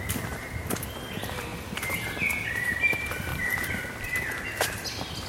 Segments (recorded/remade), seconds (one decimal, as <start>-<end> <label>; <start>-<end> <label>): 0.0-3.3 recorded; 3.3-4.1 remade; 4.1-5.3 recorded